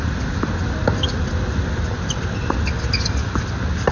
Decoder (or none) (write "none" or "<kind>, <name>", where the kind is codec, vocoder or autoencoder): none